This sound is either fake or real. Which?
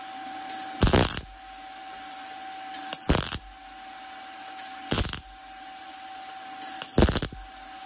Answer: real